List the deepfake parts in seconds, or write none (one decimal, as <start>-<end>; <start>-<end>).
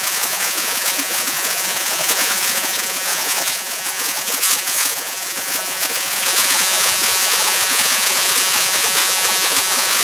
0.0-10.0